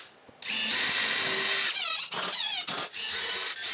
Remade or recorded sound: recorded